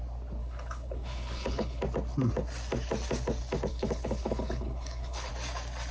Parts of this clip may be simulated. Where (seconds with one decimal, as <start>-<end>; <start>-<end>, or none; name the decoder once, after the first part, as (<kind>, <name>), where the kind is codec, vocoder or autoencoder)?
0.4-1.8 (codec, HILCodec); 3.7-5.3